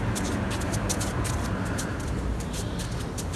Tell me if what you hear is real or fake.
real